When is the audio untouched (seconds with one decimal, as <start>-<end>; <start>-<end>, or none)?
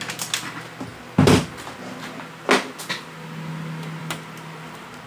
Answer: 0.0-5.1